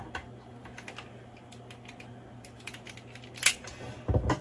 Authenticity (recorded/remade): recorded